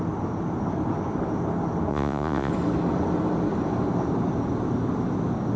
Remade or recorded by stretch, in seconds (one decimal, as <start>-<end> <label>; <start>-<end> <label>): 0.0-1.9 recorded; 1.9-2.5 remade; 2.5-5.6 recorded